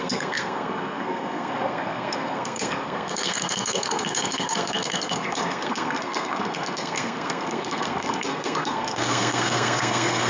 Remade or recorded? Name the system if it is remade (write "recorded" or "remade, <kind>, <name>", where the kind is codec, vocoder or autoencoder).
remade, codec, SNAC